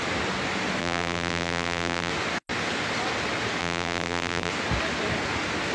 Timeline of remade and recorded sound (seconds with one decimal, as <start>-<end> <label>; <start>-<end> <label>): 0.0-0.8 recorded; 0.8-2.1 remade; 2.1-3.6 recorded; 3.6-4.5 remade; 4.5-5.7 recorded